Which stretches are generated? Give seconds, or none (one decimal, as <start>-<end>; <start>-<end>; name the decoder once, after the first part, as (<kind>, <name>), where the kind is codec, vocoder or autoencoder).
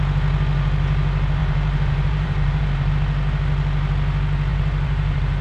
1.4-2.9 (vocoder, BigVGAN v2); 4.5-5.4